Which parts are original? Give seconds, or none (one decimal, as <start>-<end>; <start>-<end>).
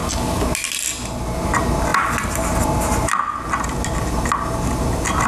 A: 0.0-5.3